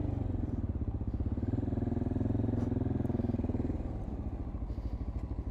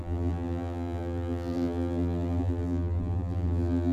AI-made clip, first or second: second